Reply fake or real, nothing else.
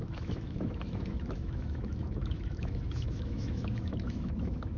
fake